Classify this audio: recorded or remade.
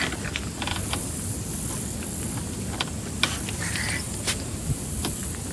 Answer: recorded